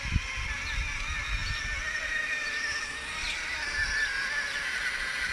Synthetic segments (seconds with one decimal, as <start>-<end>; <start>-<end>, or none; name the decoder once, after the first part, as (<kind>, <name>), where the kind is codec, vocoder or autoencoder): none